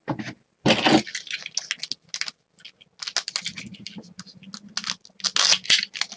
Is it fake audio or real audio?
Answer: real